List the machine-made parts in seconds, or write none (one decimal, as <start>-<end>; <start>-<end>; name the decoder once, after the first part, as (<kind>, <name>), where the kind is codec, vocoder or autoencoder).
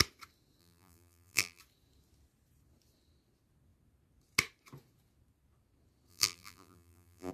0.6-1.6 (vocoder, BigVGAN v2); 6.1-7.3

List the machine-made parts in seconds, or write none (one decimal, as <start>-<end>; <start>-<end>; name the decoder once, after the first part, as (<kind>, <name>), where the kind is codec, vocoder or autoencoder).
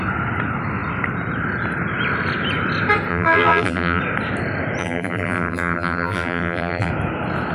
3.1-4.0 (vocoder, BigVGAN v2); 4.8-6.9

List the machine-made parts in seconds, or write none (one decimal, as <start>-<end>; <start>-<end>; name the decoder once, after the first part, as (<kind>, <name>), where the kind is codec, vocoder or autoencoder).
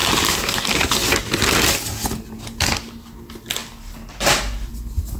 0.0-1.1 (vocoder, BigVGAN v2)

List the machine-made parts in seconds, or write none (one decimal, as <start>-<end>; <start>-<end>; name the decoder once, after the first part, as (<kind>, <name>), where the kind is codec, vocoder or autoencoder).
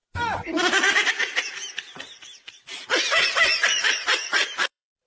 0.0-1.1 (vocoder, BigVGAN v2); 4.3-5.1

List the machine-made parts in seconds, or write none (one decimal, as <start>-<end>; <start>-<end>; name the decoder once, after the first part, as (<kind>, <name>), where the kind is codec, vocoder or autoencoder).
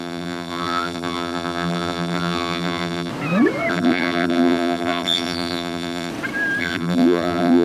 0.0-3.1 (vocoder, BigVGAN v2); 3.7-6.1; 6.6-7.6